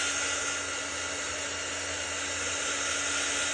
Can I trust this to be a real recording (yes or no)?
yes